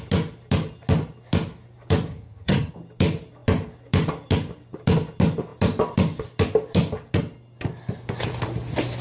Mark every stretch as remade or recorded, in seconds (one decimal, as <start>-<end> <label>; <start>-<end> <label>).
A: 0.0-2.1 recorded; 2.1-2.7 remade; 2.7-9.0 recorded